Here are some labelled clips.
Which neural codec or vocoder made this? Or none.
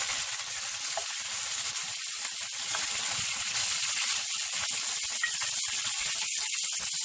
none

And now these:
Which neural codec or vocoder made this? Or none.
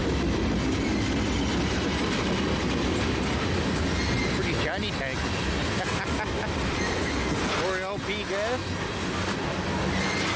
none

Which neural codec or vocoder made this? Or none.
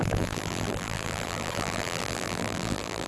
vocoder, BigVGAN v2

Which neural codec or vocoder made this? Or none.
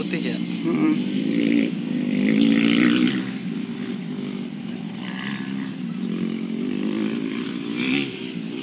vocoder, BigVGAN v2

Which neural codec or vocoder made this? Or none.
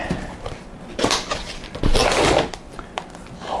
none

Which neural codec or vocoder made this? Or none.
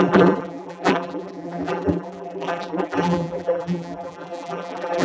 vocoder, BigVGAN v2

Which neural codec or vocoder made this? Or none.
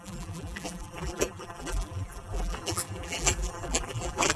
vocoder, BigVGAN v2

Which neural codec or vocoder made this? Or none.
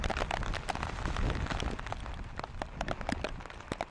none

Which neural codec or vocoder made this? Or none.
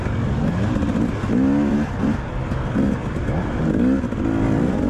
none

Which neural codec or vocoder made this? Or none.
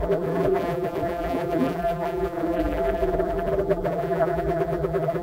vocoder, BigVGAN v2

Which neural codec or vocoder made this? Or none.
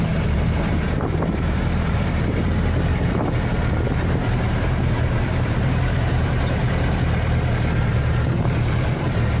vocoder, BigVGAN v2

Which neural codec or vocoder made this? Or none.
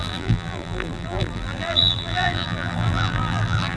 vocoder, BigVGAN v2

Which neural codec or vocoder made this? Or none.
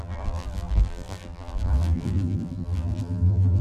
vocoder, BigVGAN v2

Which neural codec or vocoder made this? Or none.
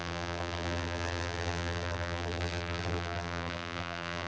vocoder, BigVGAN v2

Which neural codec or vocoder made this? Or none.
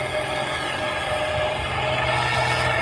none